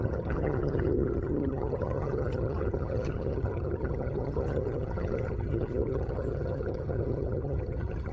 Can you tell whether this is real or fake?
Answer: fake